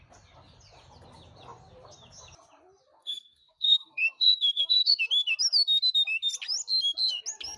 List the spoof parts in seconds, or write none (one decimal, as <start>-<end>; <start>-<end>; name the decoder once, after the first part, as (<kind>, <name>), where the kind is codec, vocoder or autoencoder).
3.0-5.0 (codec, SNAC)